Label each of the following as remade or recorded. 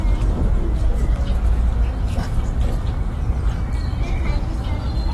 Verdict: recorded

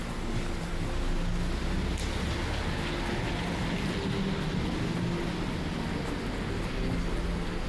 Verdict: recorded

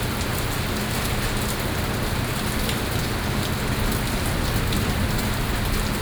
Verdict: recorded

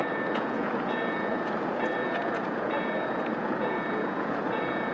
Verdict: remade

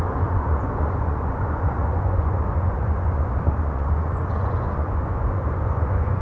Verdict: remade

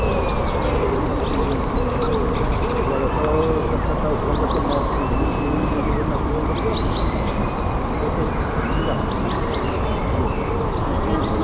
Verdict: recorded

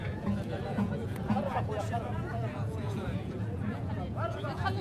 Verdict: remade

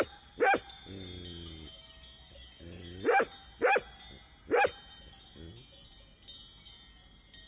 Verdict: recorded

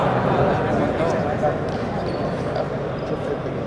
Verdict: recorded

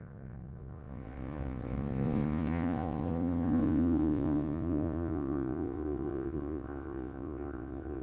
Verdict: remade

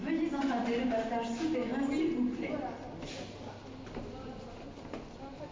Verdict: recorded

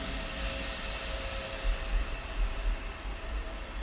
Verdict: recorded